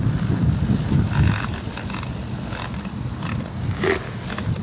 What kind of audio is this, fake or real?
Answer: real